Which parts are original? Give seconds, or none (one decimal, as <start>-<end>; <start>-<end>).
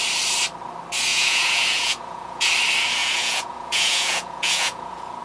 0.0-1.1; 2.5-3.0